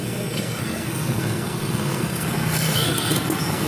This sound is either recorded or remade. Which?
remade